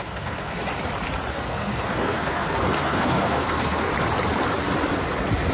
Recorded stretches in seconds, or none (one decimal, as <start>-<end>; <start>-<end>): 0.6-1.3; 3.9-5.5